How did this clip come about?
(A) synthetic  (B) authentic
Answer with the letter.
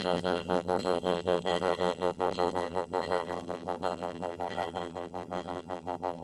A